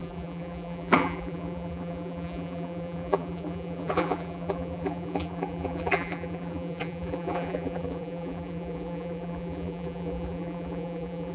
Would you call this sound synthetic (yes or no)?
yes